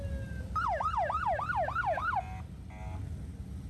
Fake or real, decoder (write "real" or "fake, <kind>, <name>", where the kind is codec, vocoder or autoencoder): real